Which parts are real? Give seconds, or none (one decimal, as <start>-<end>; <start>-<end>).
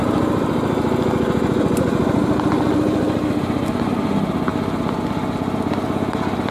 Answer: 0.0-6.5